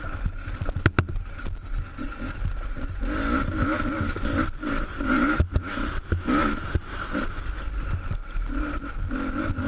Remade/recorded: recorded